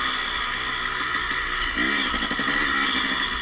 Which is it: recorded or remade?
recorded